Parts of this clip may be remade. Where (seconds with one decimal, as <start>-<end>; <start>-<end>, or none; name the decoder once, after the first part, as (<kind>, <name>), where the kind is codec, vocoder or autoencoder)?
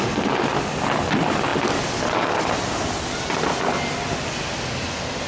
none